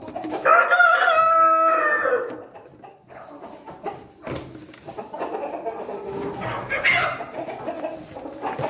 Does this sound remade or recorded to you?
recorded